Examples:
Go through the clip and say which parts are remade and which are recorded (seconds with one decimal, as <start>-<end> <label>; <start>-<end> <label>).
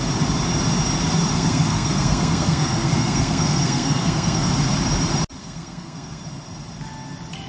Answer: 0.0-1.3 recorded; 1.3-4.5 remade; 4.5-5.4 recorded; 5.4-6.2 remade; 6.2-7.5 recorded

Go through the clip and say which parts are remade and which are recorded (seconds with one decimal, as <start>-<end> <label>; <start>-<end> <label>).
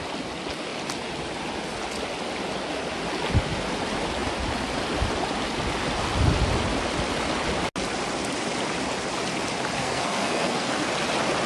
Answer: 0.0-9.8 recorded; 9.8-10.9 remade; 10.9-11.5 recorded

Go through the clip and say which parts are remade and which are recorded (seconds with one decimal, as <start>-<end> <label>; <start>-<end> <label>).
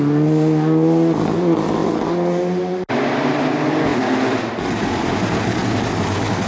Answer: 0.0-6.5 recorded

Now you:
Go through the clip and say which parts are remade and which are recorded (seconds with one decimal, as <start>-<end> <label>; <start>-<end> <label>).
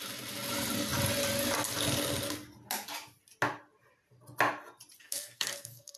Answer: 0.0-5.0 recorded; 5.0-6.0 remade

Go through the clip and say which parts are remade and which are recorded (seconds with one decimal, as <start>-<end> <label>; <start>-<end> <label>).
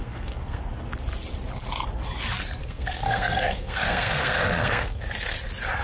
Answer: 0.0-0.6 remade; 0.6-2.6 recorded; 2.6-5.0 remade; 5.0-5.8 recorded